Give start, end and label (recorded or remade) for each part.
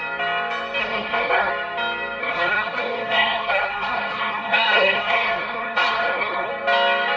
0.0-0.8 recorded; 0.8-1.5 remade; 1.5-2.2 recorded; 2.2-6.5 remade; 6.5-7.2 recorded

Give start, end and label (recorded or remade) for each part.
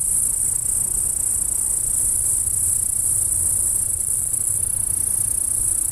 0.0-3.9 recorded; 3.9-4.6 remade; 4.6-5.9 recorded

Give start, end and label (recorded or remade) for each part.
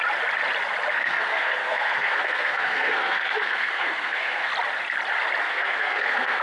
0.0-0.9 recorded; 0.9-4.5 remade; 4.5-5.4 recorded; 5.4-6.4 remade